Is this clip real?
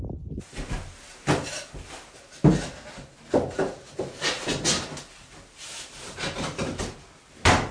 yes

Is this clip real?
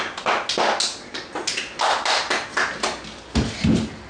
yes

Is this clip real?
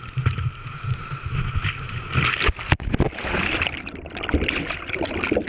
yes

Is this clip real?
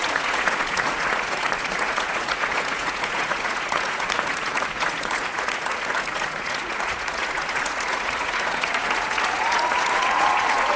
no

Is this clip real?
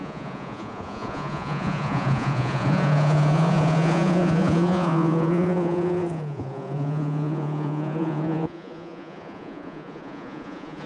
no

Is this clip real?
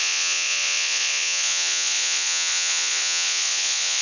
no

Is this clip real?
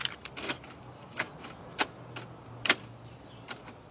yes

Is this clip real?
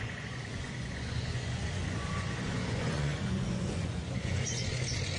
no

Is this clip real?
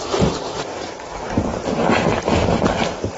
yes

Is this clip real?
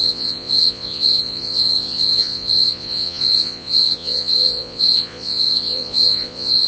no